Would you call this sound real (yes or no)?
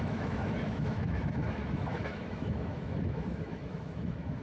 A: no